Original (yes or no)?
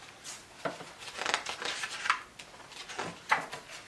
yes